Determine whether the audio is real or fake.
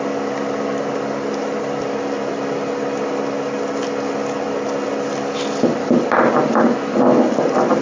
real